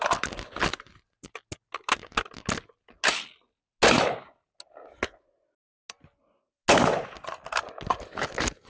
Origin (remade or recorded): recorded